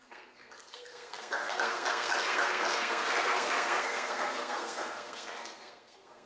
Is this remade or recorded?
remade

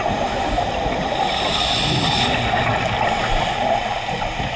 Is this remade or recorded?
remade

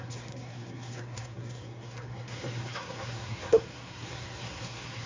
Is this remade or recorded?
remade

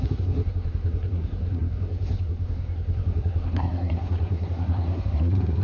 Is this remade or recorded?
remade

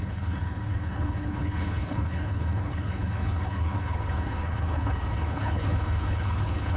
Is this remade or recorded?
remade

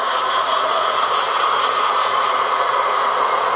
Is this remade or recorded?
remade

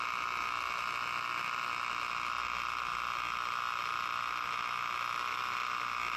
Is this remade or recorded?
recorded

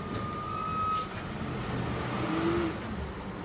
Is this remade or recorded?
recorded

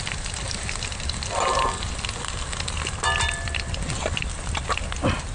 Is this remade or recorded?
recorded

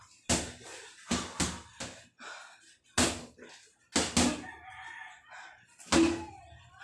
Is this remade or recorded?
recorded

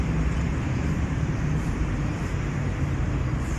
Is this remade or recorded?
remade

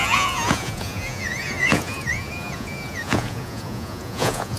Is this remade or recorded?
remade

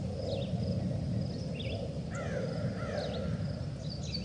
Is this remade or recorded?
recorded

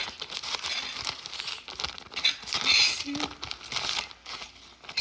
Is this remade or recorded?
recorded